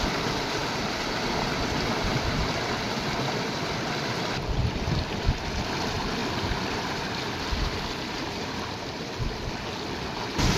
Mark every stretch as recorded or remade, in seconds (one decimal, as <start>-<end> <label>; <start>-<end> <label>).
0.0-10.6 recorded